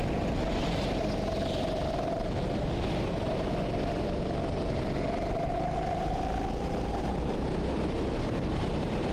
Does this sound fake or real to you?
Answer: real